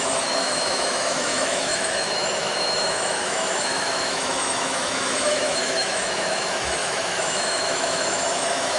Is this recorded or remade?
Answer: remade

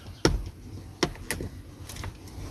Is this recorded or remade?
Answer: recorded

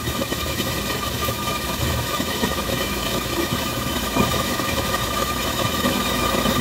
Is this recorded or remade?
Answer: remade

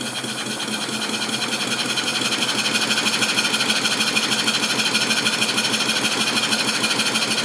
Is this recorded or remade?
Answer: recorded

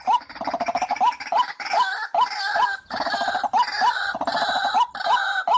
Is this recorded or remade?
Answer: recorded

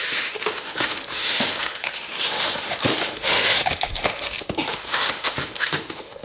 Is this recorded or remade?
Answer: remade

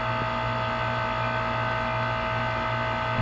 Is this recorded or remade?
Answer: recorded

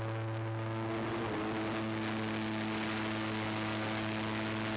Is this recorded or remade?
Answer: recorded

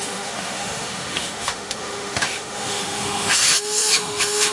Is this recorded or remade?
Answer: remade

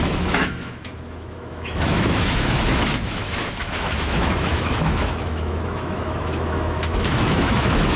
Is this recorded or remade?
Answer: remade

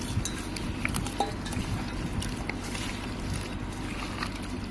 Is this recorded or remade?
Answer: recorded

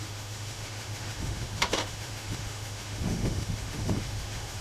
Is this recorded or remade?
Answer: remade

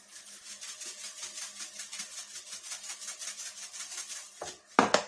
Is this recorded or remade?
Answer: recorded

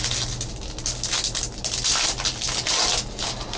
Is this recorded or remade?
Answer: recorded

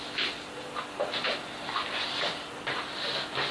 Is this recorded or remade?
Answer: recorded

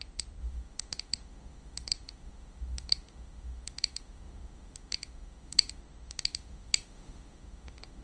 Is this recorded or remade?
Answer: remade